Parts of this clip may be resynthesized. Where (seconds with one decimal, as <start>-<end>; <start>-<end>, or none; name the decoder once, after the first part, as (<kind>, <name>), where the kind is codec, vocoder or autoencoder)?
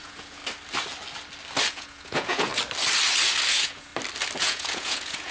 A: 0.0-0.4 (vocoder, Vocos); 1.7-2.5; 3.5-3.9; 4.4-5.3